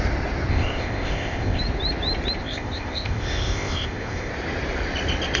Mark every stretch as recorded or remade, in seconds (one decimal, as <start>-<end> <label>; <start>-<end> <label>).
0.0-0.5 recorded; 0.5-1.6 remade; 1.6-2.4 recorded; 2.4-4.3 remade; 4.3-5.4 recorded